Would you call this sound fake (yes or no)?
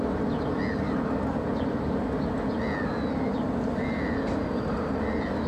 no